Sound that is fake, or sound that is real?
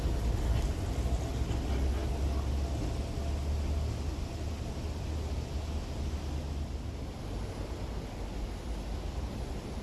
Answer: real